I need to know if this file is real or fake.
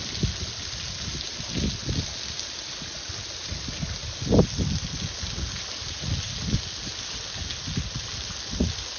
real